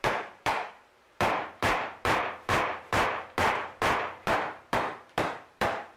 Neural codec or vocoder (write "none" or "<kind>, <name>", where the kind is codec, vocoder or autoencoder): vocoder, BigVGAN v2